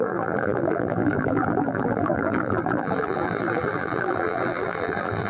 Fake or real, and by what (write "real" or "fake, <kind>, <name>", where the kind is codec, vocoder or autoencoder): fake, vocoder, BigVGAN v2